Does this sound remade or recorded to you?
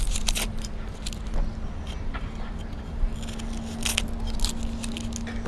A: recorded